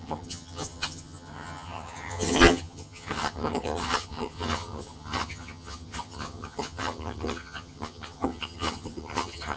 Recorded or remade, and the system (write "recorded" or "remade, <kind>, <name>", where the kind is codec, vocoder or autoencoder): remade, vocoder, HiFi-GAN